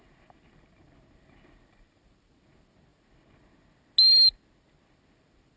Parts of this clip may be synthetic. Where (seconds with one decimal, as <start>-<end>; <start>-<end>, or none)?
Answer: none